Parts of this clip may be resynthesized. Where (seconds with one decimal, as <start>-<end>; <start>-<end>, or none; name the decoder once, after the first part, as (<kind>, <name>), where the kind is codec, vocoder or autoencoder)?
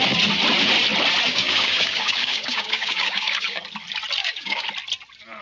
1.3-3.6 (codec, DAC); 4.2-4.7